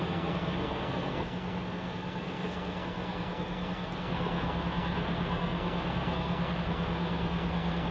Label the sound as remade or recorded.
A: remade